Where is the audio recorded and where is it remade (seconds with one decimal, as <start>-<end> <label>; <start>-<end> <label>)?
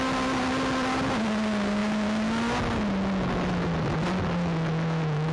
0.0-5.3 recorded